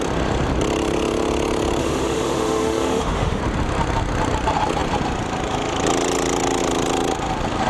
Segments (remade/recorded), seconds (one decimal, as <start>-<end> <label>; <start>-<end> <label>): 0.0-1.8 recorded; 1.8-3.4 remade; 3.4-7.7 recorded